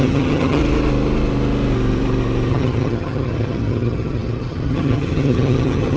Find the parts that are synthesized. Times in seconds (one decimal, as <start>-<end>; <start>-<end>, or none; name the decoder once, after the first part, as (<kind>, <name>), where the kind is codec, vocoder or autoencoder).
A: 0.0-0.6 (vocoder, HiFi-GAN); 2.5-6.0